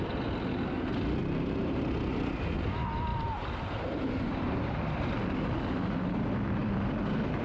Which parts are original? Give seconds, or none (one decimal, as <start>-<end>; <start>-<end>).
0.0-1.2; 1.8-3.1; 4.1-7.4